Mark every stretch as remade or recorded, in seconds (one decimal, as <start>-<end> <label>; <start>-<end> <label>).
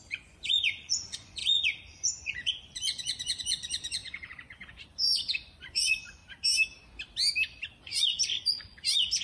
0.0-6.2 remade; 6.2-7.8 recorded; 7.8-9.2 remade